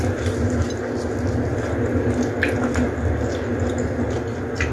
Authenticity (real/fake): real